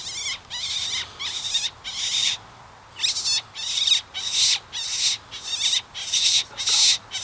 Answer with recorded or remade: recorded